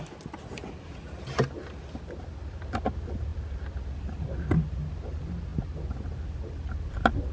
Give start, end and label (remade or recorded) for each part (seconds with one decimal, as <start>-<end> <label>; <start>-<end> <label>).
0.0-7.3 recorded